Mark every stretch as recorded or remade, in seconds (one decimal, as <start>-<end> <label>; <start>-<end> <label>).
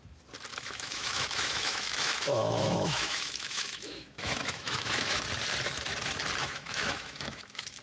0.0-0.5 recorded; 0.5-5.2 remade; 5.2-6.4 recorded; 6.4-7.8 remade